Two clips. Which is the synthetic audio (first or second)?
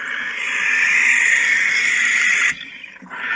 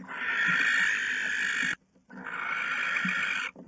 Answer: first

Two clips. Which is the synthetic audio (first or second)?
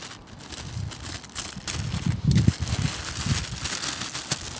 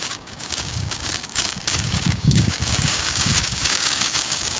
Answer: second